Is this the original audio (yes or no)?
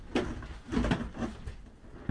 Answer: yes